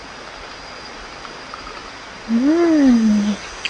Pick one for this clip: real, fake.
real